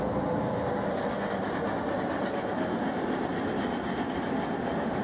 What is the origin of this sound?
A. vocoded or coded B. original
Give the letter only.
B